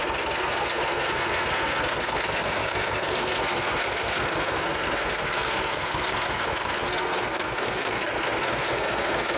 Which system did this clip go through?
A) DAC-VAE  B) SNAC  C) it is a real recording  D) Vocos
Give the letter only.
B